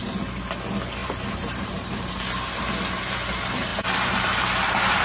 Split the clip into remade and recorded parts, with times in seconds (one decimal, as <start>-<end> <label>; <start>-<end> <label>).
0.0-1.0 recorded; 1.0-2.2 remade; 2.2-3.7 recorded; 3.7-5.0 remade